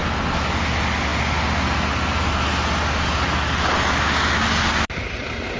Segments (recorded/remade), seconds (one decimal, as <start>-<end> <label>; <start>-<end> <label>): 0.0-5.6 recorded